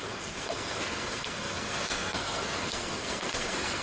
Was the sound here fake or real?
fake